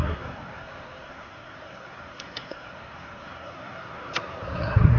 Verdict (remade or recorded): remade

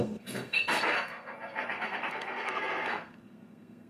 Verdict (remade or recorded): remade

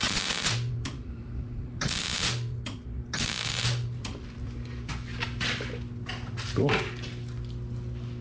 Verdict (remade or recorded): recorded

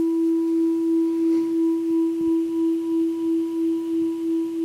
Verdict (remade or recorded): recorded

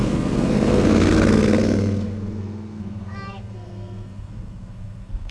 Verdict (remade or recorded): remade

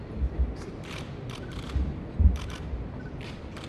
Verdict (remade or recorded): recorded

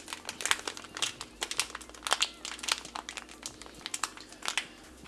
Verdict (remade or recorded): recorded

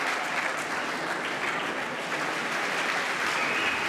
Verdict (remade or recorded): recorded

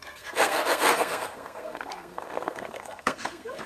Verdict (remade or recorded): remade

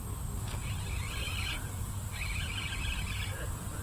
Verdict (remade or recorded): recorded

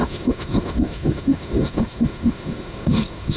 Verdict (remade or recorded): remade